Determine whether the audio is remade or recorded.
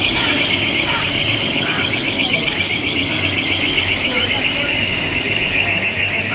remade